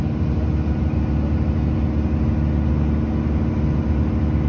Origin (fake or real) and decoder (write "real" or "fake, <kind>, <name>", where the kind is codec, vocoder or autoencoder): real